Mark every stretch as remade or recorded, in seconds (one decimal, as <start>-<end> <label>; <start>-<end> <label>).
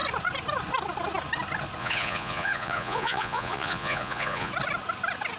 0.0-1.8 recorded; 1.8-4.5 remade; 4.5-5.4 recorded